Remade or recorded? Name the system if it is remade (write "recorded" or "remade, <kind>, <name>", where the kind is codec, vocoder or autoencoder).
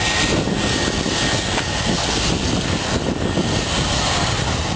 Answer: recorded